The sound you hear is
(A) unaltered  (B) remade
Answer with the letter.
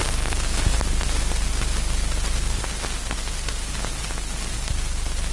A